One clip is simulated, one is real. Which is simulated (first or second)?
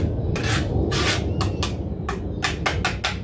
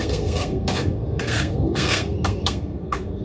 second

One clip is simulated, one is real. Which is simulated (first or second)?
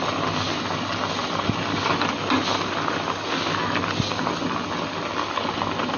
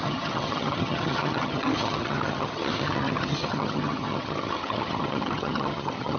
second